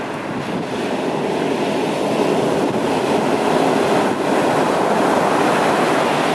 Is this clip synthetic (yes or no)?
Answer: no